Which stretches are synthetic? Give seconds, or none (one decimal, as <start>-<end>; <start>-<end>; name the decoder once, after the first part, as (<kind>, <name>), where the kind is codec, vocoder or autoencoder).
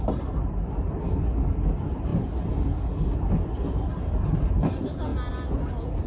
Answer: none